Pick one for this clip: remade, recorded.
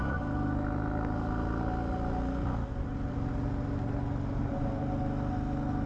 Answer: recorded